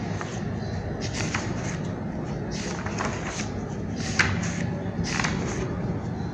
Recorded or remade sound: recorded